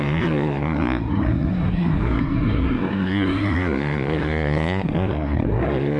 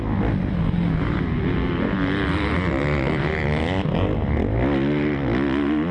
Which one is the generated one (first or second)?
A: first